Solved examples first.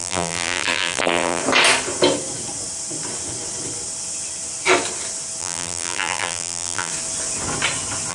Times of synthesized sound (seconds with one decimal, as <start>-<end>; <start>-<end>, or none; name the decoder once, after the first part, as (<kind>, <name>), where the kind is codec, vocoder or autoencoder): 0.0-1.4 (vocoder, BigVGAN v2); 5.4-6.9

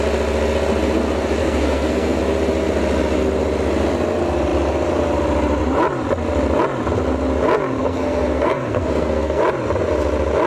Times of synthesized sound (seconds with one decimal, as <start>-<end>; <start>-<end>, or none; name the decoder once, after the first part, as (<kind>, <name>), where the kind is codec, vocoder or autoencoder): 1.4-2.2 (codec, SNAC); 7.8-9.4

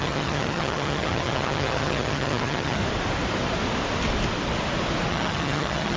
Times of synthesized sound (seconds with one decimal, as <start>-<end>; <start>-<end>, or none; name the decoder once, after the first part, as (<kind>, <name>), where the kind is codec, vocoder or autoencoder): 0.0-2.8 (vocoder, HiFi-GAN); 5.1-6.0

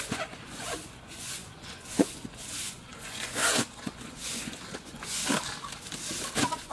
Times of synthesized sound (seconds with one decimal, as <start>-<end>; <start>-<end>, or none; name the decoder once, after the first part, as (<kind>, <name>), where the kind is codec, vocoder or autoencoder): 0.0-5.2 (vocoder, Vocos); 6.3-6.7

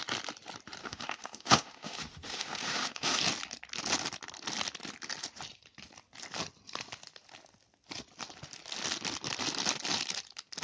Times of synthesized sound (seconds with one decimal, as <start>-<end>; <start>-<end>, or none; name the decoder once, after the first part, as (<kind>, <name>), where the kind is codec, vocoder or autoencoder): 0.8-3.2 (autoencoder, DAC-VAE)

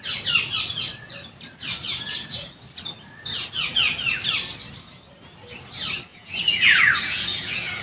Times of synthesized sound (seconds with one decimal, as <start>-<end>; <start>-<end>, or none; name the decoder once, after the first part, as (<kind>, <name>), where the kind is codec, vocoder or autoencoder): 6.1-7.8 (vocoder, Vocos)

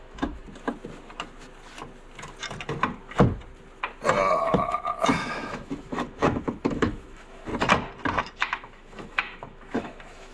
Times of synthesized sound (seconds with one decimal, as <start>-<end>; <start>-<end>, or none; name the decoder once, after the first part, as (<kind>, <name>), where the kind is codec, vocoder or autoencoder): 0.0-0.4 (autoencoder, DAC-VAE); 4.4-7.5; 8.2-10.3

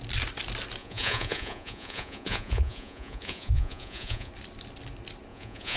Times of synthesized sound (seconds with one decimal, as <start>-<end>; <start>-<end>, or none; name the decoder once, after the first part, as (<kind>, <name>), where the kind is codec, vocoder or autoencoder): 0.8-4.3 (vocoder, Vocos); 5.3-5.8